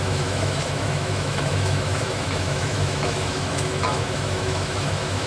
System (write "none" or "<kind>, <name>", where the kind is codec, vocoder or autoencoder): autoencoder, DAC-VAE